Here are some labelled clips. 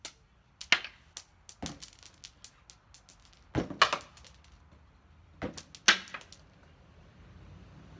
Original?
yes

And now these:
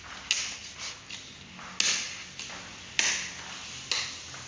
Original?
yes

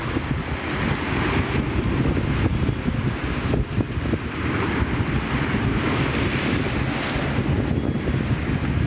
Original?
yes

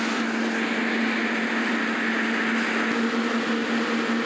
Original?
yes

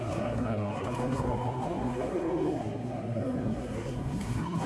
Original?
no